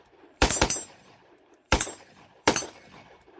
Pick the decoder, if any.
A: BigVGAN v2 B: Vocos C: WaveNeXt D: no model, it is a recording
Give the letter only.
A